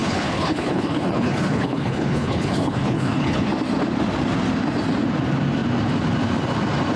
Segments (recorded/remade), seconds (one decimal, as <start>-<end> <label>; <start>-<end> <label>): 0.0-3.5 remade; 3.5-7.0 recorded